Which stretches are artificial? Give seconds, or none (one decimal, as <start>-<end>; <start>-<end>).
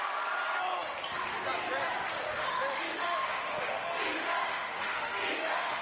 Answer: 2.3-5.8